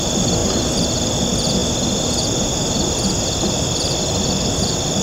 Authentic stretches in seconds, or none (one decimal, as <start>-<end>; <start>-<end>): 0.0-5.0